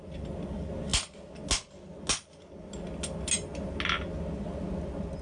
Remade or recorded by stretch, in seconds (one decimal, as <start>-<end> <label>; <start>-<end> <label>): 0.0-5.2 recorded